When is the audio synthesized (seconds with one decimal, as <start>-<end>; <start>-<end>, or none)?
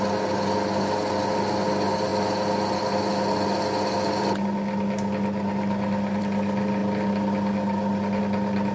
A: none